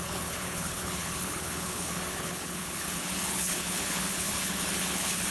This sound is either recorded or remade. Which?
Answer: remade